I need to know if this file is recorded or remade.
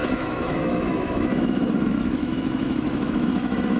remade